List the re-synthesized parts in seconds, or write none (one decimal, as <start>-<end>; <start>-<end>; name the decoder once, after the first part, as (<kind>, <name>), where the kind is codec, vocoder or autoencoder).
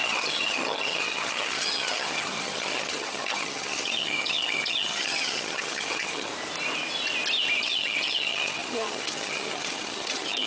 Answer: 0.0-6.3 (vocoder, HiFi-GAN); 7.6-10.5